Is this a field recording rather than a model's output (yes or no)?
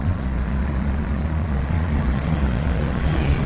no